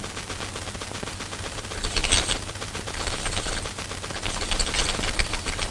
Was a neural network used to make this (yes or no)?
no